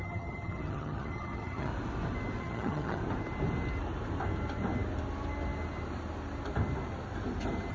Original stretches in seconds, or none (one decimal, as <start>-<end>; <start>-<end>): 1.7-2.4; 3.0-7.7